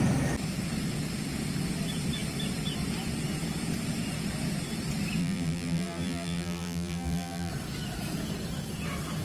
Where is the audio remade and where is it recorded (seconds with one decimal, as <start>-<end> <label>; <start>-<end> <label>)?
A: 0.0-5.2 recorded; 5.2-7.5 remade; 7.5-9.2 recorded